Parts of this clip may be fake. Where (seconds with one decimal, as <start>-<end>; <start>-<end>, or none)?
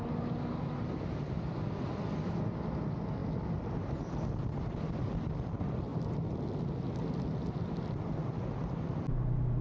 none